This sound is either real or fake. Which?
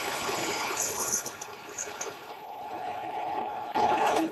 fake